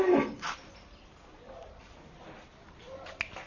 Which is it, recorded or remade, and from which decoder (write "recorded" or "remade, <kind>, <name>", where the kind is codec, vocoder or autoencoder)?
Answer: recorded